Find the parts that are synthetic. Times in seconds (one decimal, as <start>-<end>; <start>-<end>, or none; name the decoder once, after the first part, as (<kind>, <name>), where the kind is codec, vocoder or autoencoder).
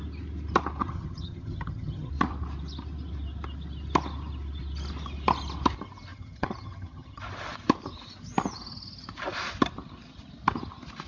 0.8-2.1 (vocoder, HiFi-GAN); 6.1-7.2